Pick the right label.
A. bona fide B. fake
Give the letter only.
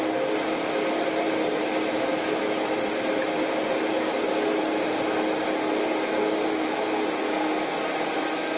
A